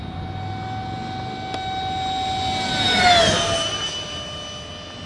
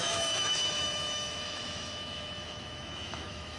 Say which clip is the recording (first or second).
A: first